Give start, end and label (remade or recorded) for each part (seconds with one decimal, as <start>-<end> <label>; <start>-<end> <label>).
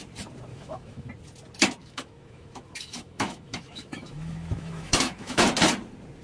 0.0-0.5 recorded; 0.5-1.1 remade; 1.1-1.8 recorded; 1.8-5.5 remade; 5.5-6.2 recorded